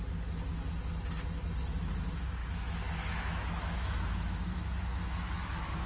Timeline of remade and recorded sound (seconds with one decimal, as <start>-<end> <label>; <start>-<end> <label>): 0.0-2.4 recorded; 2.4-5.9 remade